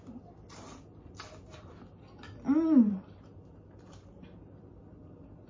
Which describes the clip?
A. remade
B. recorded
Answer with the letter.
B